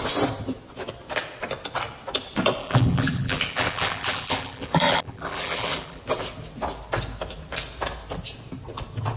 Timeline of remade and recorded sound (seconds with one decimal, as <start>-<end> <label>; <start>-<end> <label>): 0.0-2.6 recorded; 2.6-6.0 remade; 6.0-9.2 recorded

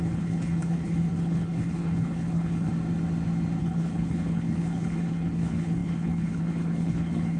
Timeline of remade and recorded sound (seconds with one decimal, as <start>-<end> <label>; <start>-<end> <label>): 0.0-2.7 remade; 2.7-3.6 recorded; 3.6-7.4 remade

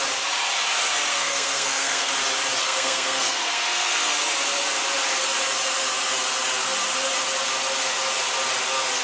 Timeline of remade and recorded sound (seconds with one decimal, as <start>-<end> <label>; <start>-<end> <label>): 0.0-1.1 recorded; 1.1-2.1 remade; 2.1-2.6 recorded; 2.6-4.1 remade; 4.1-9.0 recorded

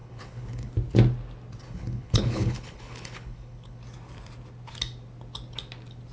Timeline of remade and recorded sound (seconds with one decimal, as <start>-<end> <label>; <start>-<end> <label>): 0.0-0.7 remade; 0.7-1.6 recorded; 1.6-3.8 remade; 3.8-6.1 recorded

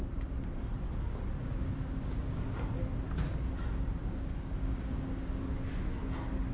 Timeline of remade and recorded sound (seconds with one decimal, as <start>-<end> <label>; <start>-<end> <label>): 0.0-1.4 recorded; 1.4-2.6 remade; 2.6-4.0 recorded; 4.0-5.5 remade; 5.5-6.5 recorded